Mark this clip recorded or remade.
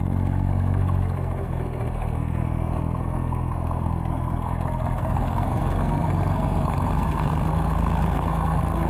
remade